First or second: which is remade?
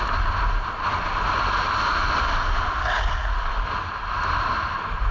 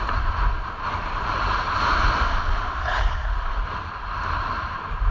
second